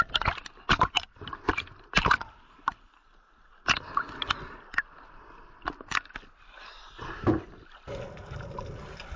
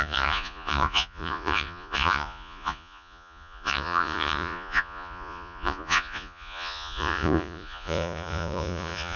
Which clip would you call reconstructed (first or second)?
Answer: second